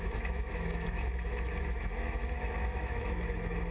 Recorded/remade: remade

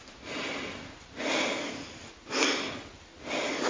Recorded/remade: recorded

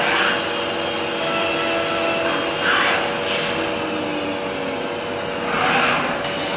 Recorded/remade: recorded